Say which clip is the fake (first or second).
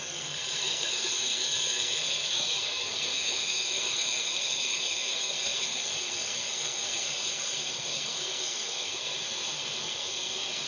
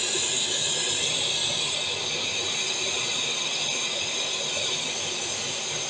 first